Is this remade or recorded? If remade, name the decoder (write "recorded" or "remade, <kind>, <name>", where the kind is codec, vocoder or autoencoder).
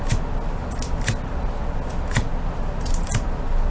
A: recorded